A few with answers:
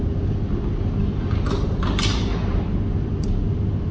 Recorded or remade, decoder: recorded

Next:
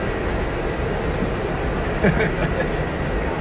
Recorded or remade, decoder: recorded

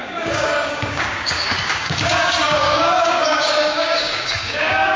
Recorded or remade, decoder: remade, codec, DAC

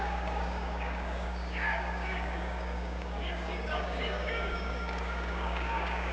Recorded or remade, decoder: remade, codec, DAC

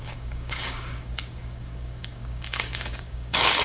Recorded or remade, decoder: remade, codec, DAC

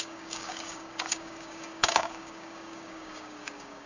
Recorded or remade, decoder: remade, codec, DAC